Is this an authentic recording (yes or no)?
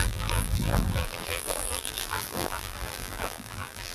no